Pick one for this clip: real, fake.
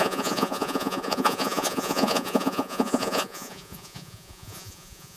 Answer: fake